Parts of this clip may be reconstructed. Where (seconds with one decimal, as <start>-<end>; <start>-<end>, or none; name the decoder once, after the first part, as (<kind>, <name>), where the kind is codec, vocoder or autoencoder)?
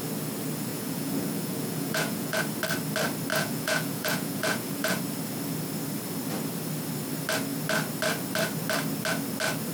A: 0.7-2.4 (vocoder, Vocos); 3.3-5.0